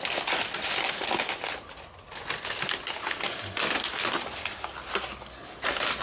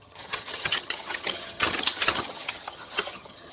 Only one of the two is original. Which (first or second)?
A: first